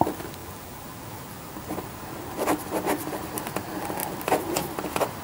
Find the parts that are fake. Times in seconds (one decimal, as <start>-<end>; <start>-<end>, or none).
0.4-1.5